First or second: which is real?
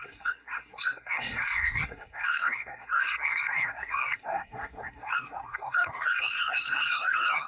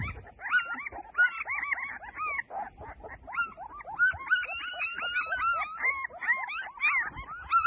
second